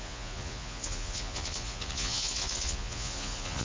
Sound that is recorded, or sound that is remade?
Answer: remade